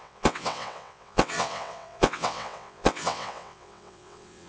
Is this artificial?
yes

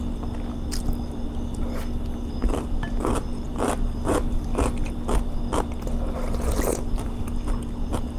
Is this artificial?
no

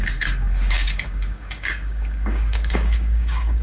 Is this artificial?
yes